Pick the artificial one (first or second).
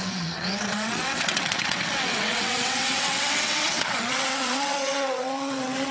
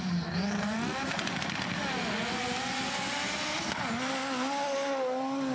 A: first